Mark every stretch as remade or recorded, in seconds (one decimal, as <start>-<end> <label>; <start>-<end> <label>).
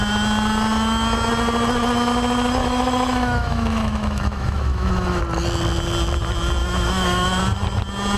0.0-2.6 recorded; 2.6-5.2 remade; 5.2-6.6 recorded; 6.6-7.4 remade; 7.4-8.2 recorded